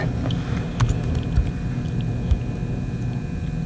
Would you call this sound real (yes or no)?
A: yes